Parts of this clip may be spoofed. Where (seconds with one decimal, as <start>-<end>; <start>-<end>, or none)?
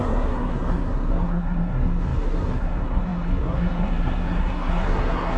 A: 0.0-5.4